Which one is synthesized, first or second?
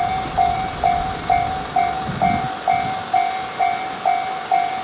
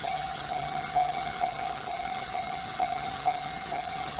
second